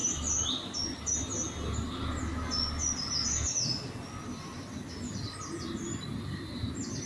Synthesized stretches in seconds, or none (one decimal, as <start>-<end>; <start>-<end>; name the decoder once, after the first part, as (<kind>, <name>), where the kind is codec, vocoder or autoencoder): none